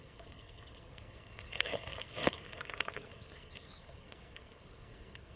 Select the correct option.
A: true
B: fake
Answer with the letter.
B